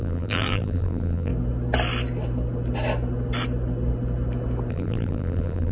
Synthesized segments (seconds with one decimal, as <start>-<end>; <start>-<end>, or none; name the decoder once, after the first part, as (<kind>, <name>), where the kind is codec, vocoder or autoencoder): 0.0-1.3 (vocoder, BigVGAN v2); 4.7-5.7